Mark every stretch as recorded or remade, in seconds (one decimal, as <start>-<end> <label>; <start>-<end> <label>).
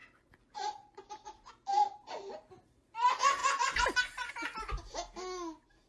0.0-1.5 remade; 1.5-3.4 recorded; 3.4-4.3 remade; 4.3-5.9 recorded